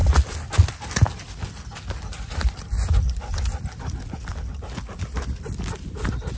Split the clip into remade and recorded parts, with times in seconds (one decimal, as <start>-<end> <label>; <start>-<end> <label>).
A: 0.0-6.4 recorded